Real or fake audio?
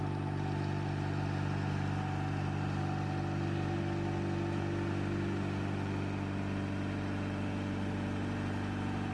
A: real